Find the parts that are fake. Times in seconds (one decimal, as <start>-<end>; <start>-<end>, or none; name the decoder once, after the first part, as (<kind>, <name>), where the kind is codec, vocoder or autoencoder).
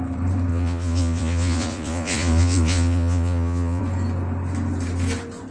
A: 0.5-3.8 (vocoder, Vocos)